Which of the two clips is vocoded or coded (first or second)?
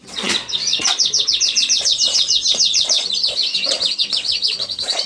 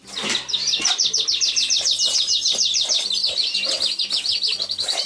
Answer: first